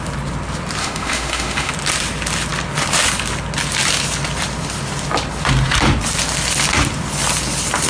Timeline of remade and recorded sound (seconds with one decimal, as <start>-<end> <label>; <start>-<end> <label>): 0.0-0.8 recorded; 0.8-1.7 remade; 1.7-7.9 recorded